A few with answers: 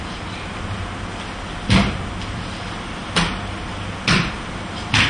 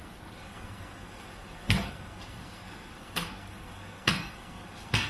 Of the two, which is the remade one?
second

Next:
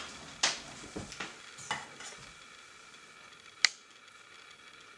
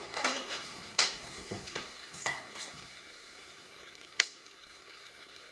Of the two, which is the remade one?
second